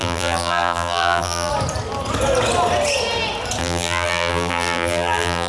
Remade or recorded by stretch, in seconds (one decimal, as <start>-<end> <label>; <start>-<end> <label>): 0.0-1.5 remade; 1.5-3.6 recorded; 3.6-5.5 remade